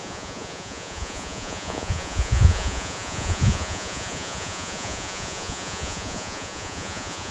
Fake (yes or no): yes